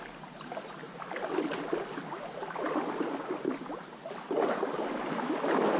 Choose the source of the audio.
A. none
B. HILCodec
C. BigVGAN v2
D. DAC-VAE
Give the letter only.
A